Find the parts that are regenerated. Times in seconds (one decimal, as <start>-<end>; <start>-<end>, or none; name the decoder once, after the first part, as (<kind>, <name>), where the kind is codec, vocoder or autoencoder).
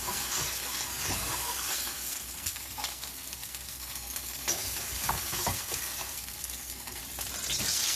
0.0-7.0 (codec, SNAC); 7.6-8.0